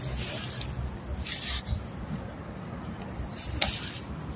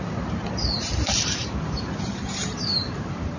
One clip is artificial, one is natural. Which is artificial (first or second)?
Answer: second